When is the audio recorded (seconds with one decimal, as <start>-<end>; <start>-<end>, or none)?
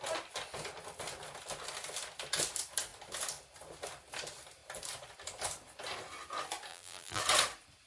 0.0-6.7; 7.2-7.9